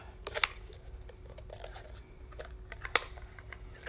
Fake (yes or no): no